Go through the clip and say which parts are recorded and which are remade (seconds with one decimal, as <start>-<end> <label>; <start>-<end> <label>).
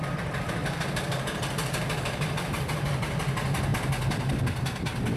0.0-0.6 recorded; 0.6-2.6 remade; 2.6-5.2 recorded